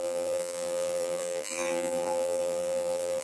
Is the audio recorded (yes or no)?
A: no